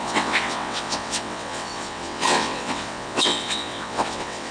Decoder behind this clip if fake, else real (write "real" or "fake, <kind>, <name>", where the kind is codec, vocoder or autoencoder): fake, vocoder, WaveNeXt